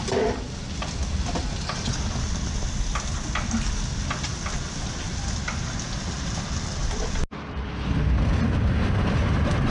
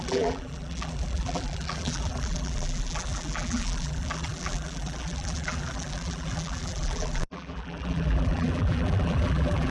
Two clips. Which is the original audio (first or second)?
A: first